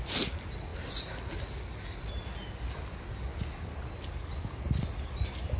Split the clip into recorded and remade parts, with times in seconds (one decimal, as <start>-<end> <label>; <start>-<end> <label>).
0.0-5.6 recorded